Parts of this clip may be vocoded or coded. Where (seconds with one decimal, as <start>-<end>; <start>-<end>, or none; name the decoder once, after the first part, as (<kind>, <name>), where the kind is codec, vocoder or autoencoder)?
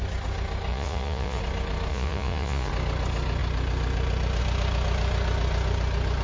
0.7-1.4 (vocoder, Vocos); 1.9-2.7